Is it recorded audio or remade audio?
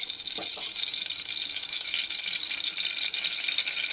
recorded